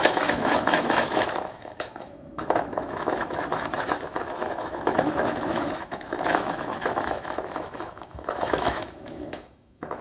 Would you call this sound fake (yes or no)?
yes